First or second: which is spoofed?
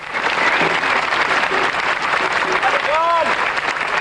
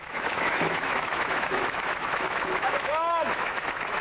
second